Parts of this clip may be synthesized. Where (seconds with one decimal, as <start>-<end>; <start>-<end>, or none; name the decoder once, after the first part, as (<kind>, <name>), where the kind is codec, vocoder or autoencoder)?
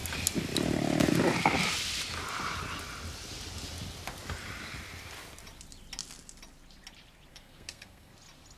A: 7.3-8.1 (codec, SNAC)